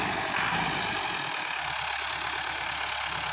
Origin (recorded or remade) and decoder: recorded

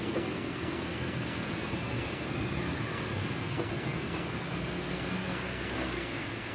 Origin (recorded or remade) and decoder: remade, codec, SNAC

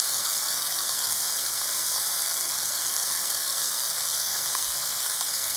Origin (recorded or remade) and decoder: remade, codec, SNAC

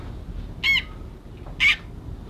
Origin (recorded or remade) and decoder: recorded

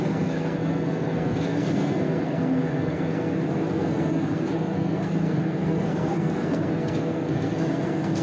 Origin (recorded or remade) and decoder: remade, codec, SNAC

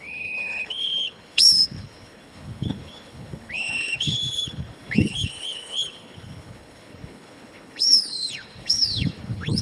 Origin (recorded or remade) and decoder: remade, codec, HILCodec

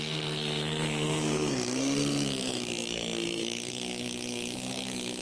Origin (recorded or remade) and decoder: remade, codec, SNAC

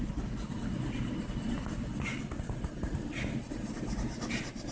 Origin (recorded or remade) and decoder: recorded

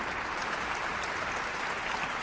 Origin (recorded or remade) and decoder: recorded